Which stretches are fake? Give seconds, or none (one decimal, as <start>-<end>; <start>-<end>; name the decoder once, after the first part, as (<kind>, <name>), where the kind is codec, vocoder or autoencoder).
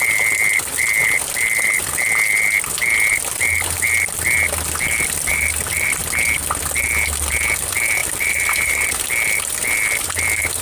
5.3-6.0 (vocoder, BigVGAN v2); 8.0-9.0